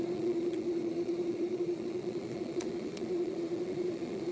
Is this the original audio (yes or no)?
no